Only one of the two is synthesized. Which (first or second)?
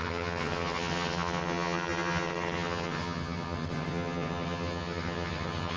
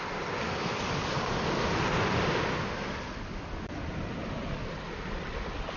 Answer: first